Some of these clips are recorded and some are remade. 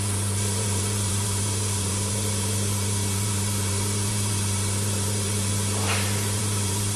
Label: remade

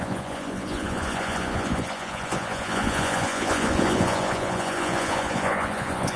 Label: remade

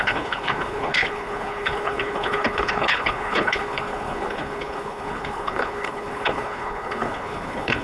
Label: remade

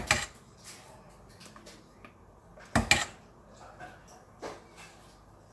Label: recorded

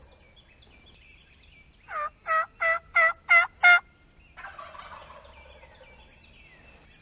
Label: recorded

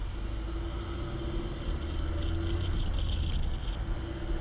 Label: recorded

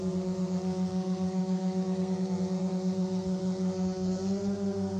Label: remade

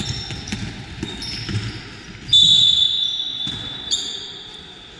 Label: recorded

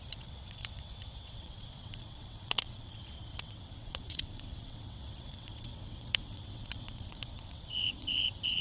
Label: remade